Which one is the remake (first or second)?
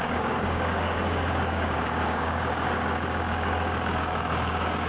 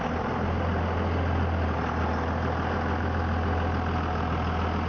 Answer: first